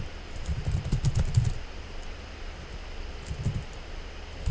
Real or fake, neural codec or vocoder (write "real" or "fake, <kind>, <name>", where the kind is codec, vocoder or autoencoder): real